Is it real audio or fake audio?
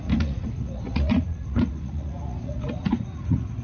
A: fake